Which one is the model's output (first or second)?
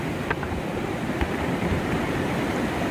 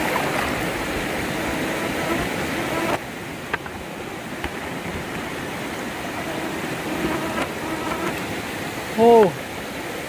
first